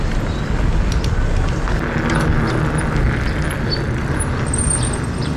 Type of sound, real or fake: real